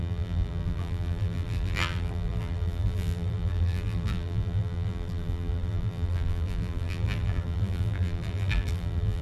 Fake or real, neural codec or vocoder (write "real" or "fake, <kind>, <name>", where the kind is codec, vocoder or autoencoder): fake, vocoder, BigVGAN v2